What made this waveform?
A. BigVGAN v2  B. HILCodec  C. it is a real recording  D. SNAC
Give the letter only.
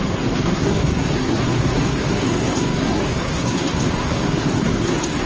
D